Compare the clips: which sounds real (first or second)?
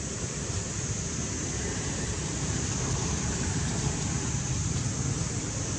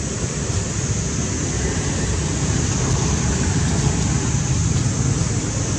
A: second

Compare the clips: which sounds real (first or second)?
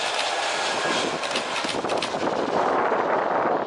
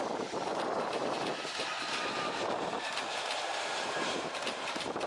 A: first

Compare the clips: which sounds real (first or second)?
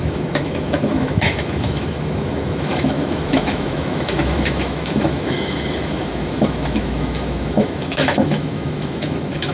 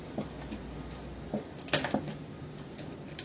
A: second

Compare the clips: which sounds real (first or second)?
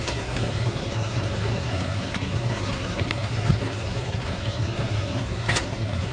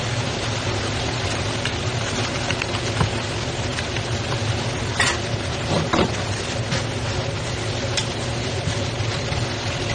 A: second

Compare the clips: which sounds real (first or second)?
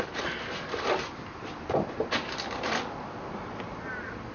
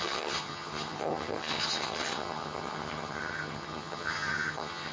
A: first